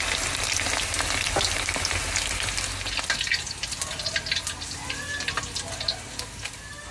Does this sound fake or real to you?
real